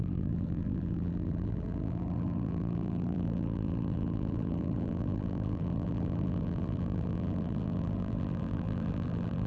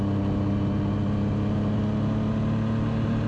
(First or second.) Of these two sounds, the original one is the second